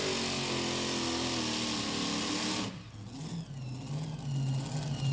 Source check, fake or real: real